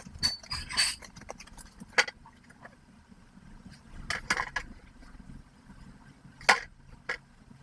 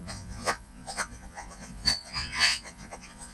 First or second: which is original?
first